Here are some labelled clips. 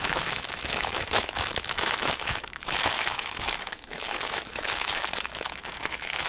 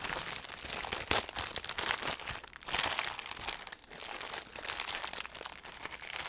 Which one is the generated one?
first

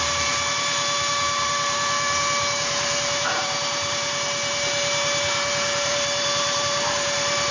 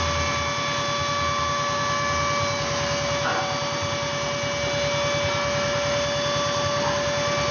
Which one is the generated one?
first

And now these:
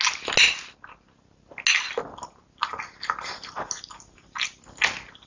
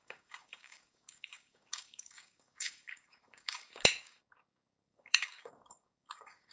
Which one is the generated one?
second